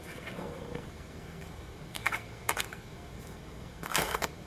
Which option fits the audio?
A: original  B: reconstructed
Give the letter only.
B